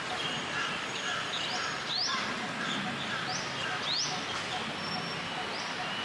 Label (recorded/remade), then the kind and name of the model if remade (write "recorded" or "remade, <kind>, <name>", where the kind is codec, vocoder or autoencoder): recorded